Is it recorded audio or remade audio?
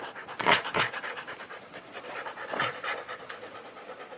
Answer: remade